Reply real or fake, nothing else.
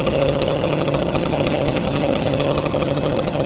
fake